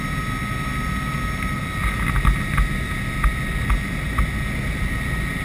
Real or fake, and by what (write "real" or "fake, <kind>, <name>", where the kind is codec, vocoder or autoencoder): real